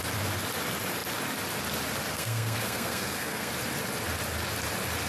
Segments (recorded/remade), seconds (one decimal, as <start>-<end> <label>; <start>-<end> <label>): 0.0-2.1 recorded; 2.1-3.5 remade; 3.5-5.1 recorded